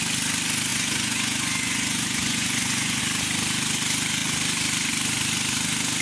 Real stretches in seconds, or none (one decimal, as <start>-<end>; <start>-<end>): 0.0-0.7; 3.0-6.0